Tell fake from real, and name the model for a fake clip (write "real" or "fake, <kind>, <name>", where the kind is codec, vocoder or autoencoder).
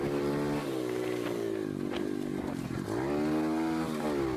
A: real